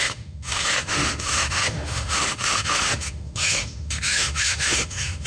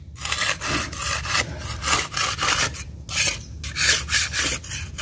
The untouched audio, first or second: second